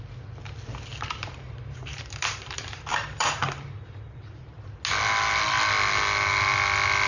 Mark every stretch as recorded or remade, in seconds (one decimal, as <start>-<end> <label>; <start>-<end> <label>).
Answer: 0.0-0.9 recorded; 0.9-4.4 remade; 4.4-7.1 recorded